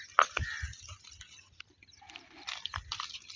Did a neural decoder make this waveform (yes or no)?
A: no